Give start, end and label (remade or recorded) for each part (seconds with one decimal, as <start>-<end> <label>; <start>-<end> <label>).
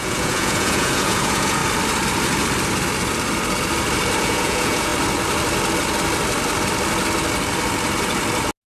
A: 0.0-1.6 remade; 1.6-4.2 recorded; 4.2-4.9 remade; 4.9-8.7 recorded